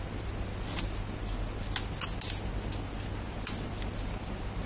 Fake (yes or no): no